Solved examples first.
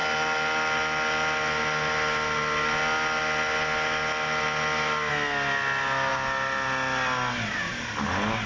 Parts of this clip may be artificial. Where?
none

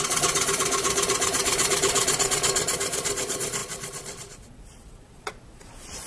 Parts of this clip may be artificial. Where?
0.0-6.1

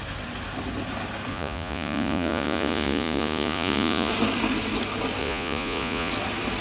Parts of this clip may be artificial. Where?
1.3-4.1; 5.2-6.1

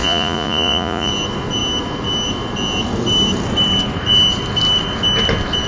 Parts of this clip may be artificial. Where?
0.0-1.1